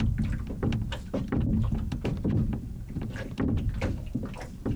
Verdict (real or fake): real